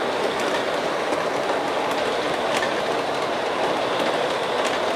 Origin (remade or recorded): recorded